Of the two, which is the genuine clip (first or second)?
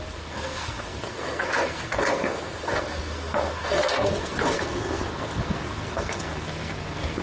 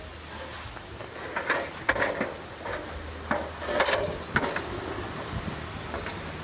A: second